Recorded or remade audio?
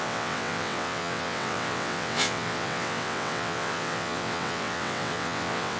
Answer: remade